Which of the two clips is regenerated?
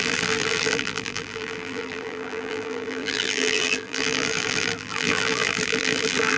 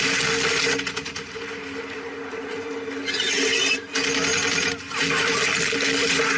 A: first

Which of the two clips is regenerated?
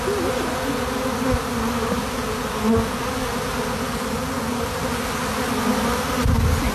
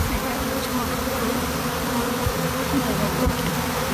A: second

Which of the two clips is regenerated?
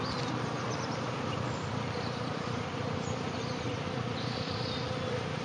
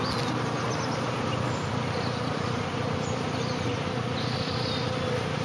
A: first